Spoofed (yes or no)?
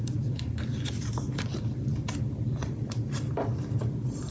yes